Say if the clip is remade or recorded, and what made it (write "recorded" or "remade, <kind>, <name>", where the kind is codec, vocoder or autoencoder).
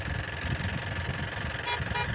recorded